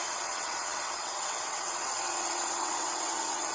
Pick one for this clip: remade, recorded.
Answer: remade